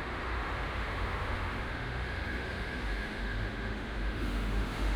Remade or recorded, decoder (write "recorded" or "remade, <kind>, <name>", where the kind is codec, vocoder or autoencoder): remade, autoencoder, DAC-VAE